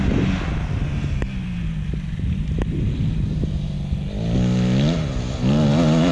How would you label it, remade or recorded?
recorded